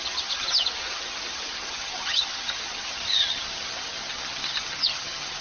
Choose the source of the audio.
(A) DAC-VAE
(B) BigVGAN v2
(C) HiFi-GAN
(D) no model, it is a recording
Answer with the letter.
C